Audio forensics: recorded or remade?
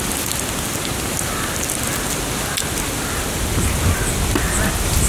recorded